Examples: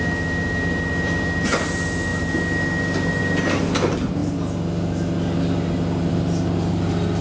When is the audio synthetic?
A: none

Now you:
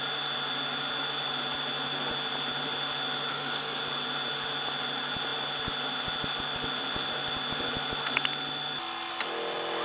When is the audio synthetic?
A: 3.3-3.8 (codec, SNAC)

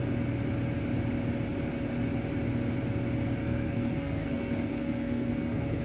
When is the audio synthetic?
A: 3.4-5.8 (codec, SNAC)

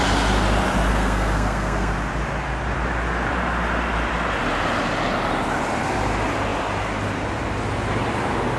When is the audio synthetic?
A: 0.9-1.9 (codec, SNAC)

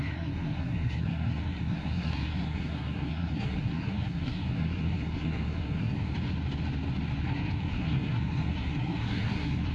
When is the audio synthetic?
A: 0.0-6.1 (codec, SNAC); 7.2-9.7

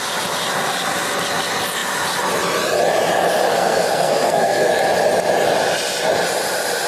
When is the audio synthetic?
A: 3.5-4.7 (codec, SNAC)